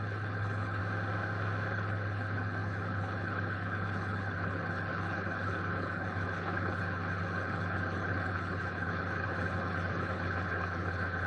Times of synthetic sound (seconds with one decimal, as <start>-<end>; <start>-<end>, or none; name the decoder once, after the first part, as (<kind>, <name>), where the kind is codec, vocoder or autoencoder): 0.0-0.8 (codec, HILCodec); 1.7-11.3